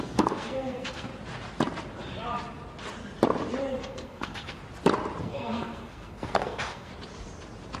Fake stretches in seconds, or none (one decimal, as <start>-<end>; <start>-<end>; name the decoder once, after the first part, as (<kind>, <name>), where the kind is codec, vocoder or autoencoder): 0.0-1.1 (codec, SNAC); 3.7-4.6; 5.2-6.9